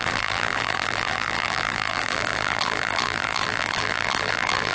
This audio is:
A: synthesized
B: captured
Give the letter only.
A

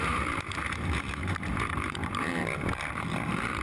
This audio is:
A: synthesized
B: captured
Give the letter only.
A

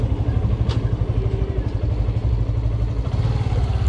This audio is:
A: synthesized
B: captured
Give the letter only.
B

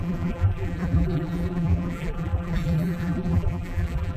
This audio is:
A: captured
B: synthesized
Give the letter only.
B